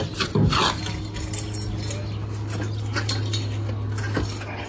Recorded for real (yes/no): yes